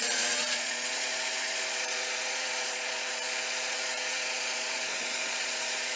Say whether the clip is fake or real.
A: fake